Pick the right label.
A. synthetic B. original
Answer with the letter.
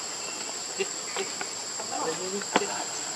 B